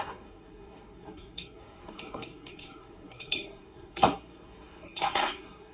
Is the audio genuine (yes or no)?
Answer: no